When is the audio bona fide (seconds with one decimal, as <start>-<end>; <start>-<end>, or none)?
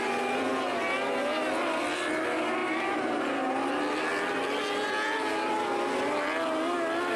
0.0-2.6; 3.7-7.2